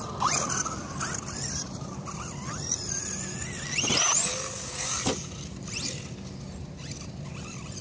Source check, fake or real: real